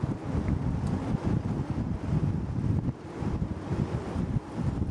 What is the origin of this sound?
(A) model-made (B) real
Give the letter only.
B